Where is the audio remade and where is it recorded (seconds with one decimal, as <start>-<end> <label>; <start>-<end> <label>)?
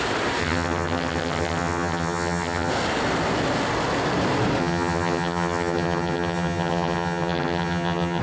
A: 0.0-0.4 recorded; 0.4-2.7 remade; 2.7-4.6 recorded; 4.6-8.2 remade